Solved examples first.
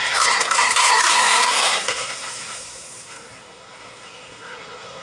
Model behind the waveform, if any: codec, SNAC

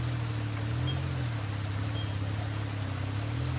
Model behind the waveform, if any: none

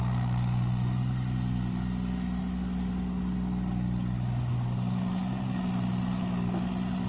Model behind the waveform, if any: none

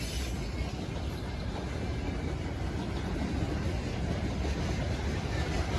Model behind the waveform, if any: none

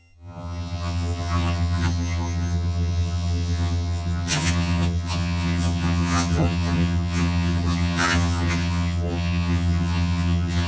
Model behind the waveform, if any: vocoder, HiFi-GAN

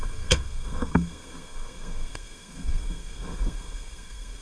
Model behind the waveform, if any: codec, SNAC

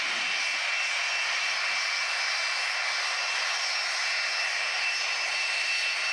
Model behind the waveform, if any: none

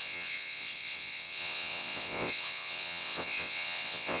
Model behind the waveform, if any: vocoder, WaveNeXt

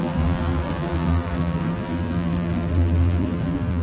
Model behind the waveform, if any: vocoder, BigVGAN v2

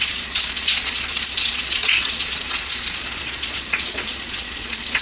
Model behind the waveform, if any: vocoder, Vocos